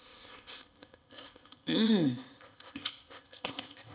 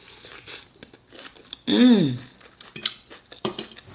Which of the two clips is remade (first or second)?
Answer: first